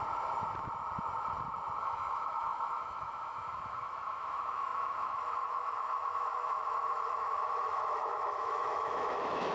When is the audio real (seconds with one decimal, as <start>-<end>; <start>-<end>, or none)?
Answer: 0.0-1.8